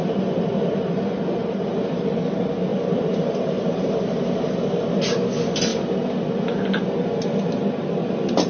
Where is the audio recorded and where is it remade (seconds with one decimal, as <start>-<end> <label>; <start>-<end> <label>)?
0.0-2.2 remade; 2.2-2.7 recorded; 2.7-5.0 remade; 5.0-8.5 recorded